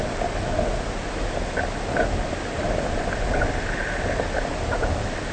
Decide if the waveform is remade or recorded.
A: recorded